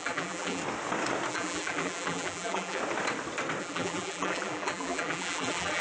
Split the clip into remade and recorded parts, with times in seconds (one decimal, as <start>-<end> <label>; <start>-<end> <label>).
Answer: 0.0-0.6 remade; 0.6-1.3 recorded; 1.3-2.8 remade; 2.8-3.6 recorded; 3.6-5.8 remade

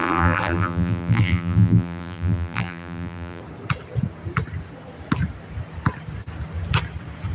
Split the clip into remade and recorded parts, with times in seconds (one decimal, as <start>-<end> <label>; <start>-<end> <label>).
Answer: 0.0-3.4 remade; 3.4-7.3 recorded

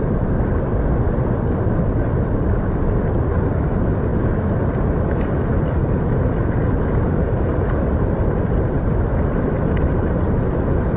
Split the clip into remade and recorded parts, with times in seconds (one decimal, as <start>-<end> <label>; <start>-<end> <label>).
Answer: 0.0-7.5 recorded; 7.5-9.9 remade; 9.9-11.0 recorded

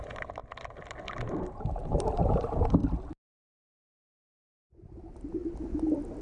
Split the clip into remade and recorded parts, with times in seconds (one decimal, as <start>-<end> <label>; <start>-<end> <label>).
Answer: 0.0-0.4 remade; 0.4-1.5 recorded; 1.5-2.8 remade; 2.8-4.6 recorded; 4.6-5.4 remade; 5.4-6.2 recorded

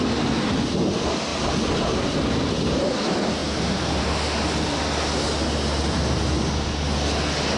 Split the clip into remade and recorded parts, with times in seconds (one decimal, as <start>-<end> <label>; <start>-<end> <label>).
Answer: 0.0-7.6 recorded

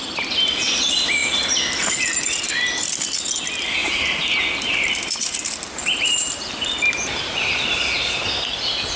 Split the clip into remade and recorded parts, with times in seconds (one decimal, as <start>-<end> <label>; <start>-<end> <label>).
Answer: 0.0-3.8 recorded; 3.8-8.0 remade; 8.0-9.0 recorded

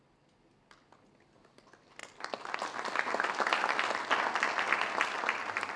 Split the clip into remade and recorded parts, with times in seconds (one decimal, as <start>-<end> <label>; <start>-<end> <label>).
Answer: 0.0-5.8 recorded